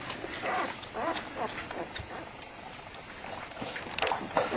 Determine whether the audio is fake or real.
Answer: fake